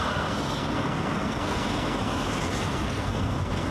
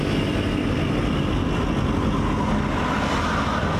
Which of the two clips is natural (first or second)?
second